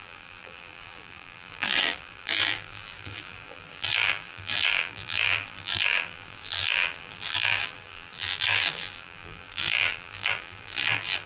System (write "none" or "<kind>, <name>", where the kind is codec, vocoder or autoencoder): vocoder, BigVGAN v2